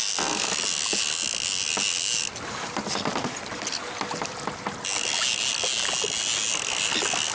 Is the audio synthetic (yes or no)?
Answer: no